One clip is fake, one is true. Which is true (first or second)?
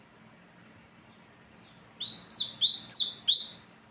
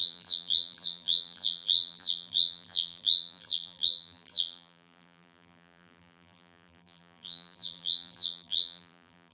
first